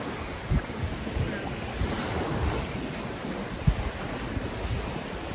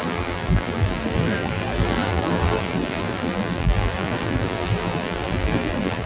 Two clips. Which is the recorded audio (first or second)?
first